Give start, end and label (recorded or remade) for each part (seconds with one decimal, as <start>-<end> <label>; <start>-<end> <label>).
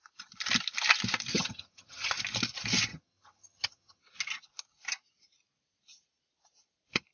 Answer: 0.0-1.3 recorded; 1.3-2.1 remade; 2.1-2.9 recorded; 2.9-4.0 remade; 4.0-7.1 recorded